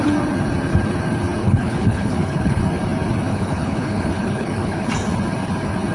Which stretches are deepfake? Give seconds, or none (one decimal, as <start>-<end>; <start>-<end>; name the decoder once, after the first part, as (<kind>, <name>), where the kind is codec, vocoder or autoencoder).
1.4-2.6 (codec, HILCodec); 3.3-4.9